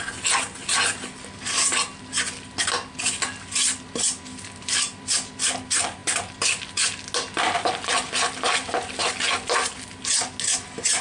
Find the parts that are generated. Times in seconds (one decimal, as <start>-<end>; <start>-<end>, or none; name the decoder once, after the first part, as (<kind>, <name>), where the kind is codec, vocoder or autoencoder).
none